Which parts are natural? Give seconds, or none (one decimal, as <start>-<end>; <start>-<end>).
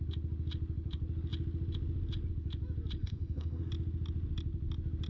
0.0-3.0; 3.7-5.1